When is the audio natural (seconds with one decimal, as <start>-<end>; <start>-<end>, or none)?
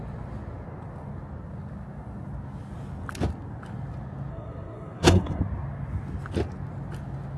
0.0-4.3; 5.4-7.4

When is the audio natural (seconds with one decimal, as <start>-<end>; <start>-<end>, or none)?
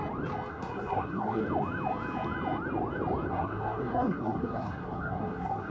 0.0-0.5; 1.4-3.3